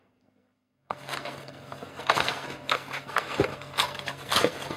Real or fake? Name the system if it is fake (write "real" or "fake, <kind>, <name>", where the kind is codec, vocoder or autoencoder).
fake, codec, SNAC